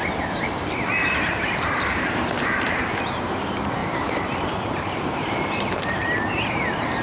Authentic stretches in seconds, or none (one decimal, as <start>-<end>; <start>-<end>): 0.0-1.0; 3.0-3.8; 6.6-7.0

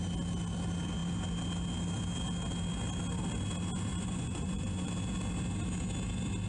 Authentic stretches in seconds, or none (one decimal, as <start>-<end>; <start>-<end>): 0.0-3.9; 4.9-6.5

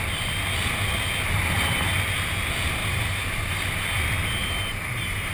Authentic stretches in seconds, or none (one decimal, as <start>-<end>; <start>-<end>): 0.0-2.8; 3.5-4.4

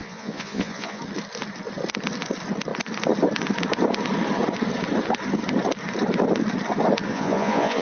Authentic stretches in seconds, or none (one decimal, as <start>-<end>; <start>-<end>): 1.0-7.1

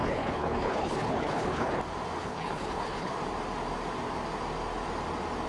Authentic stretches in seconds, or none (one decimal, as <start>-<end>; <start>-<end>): 1.8-2.2; 3.1-5.5

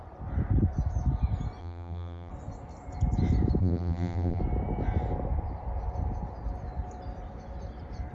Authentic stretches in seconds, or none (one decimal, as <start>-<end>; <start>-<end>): 0.0-1.6; 2.3-3.6; 4.4-8.1

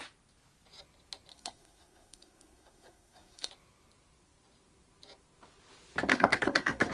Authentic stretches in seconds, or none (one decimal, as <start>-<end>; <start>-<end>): 0.0-1.3; 3.5-6.1